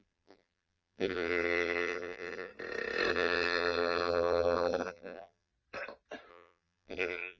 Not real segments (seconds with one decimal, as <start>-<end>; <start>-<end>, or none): 0.0-2.5; 3.1-5.5; 6.3-7.4

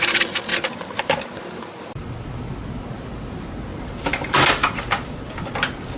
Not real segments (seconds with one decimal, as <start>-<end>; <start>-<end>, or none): 0.5-2.5; 3.7-4.3

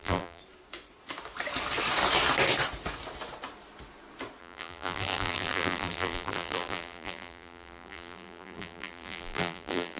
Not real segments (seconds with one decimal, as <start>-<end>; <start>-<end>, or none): 0.0-0.4; 4.4-10.0

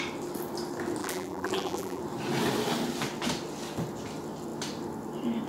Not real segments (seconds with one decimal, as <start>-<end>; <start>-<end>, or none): 1.0-2.0

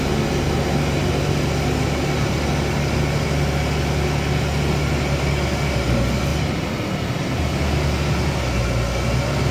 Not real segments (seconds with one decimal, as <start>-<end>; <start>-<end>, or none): 6.3-7.4

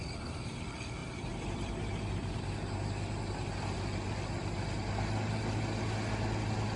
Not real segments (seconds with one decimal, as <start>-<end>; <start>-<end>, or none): 1.0-2.4